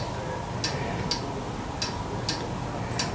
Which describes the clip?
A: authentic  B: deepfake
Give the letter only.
A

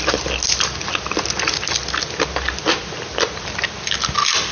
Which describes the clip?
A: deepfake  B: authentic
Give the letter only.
B